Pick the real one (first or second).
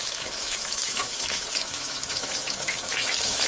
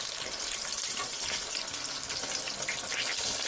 second